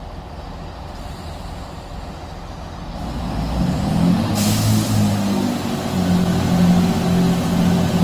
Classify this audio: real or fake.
real